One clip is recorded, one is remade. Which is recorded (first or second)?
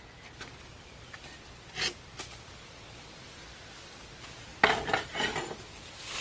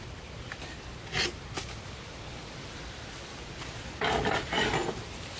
first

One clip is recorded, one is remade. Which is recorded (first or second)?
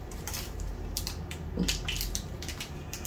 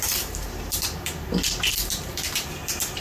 first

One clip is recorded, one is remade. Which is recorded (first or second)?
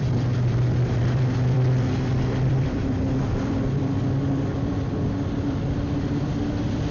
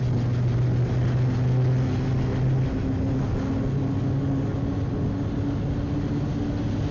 second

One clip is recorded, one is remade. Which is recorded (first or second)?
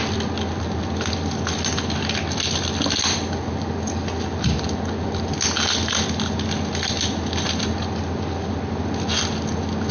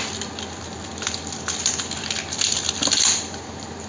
first